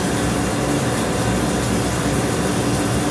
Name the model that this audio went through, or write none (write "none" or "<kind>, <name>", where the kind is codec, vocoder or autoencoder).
none